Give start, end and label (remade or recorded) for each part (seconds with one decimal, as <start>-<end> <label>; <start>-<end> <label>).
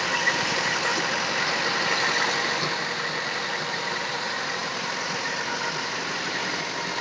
0.0-0.9 remade; 0.9-3.7 recorded; 3.7-7.0 remade